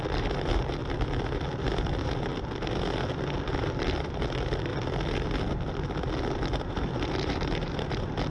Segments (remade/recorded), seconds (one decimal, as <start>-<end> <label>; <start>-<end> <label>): 0.0-0.8 remade; 0.8-1.6 recorded; 1.6-2.3 remade; 2.3-3.5 recorded; 3.5-4.7 remade; 4.7-6.7 recorded; 6.7-8.3 remade